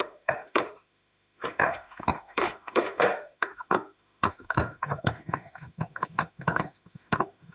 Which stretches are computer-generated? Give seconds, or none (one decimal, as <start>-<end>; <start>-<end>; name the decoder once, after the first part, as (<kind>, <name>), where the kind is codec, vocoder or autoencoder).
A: 0.0-7.5 (autoencoder, DAC-VAE)